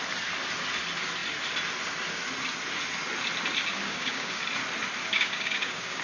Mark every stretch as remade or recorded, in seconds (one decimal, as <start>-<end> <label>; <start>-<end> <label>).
0.0-3.7 recorded; 3.7-4.4 remade; 4.4-5.0 recorded; 5.0-6.0 remade